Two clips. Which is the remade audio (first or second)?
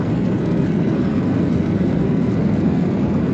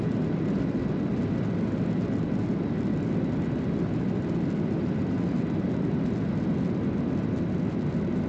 first